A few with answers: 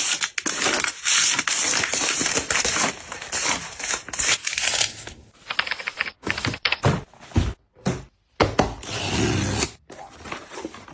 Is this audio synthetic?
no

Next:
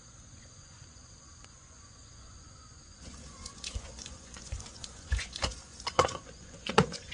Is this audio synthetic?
yes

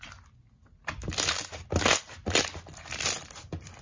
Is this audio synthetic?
no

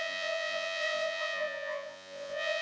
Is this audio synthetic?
yes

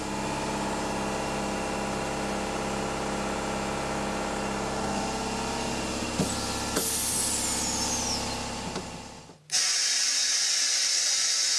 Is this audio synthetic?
no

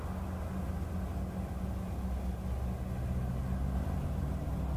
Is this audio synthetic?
no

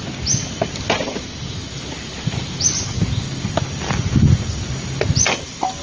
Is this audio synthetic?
no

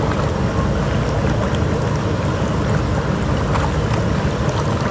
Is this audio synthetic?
no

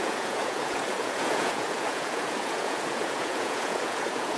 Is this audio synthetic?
yes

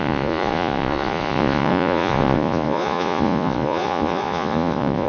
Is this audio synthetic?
yes